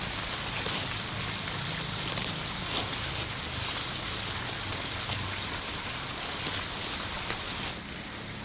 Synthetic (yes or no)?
no